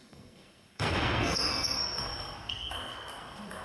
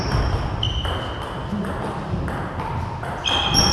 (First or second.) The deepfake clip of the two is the first